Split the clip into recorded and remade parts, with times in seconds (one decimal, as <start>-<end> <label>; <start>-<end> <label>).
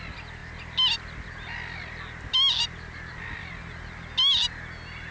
0.0-5.1 recorded